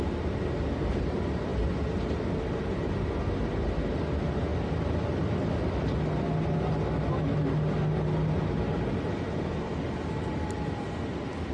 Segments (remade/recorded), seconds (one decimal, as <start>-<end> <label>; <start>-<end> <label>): 0.0-11.5 recorded